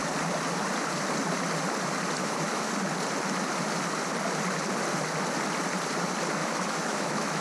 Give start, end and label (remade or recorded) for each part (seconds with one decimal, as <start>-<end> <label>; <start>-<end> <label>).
0.0-2.2 recorded; 2.2-2.7 remade; 2.7-6.4 recorded; 6.4-7.4 remade